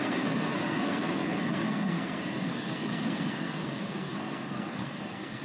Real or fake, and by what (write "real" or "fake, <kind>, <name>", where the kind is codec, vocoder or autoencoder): fake, codec, SNAC